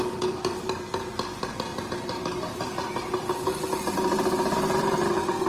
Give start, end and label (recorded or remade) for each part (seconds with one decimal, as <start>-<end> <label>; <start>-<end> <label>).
0.0-5.5 recorded